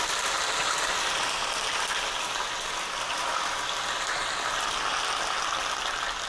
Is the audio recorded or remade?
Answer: recorded